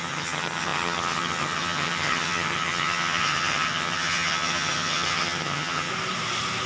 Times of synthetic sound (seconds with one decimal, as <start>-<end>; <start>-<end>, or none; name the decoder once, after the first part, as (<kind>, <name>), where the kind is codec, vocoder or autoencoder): 0.0-5.9 (vocoder, HiFi-GAN)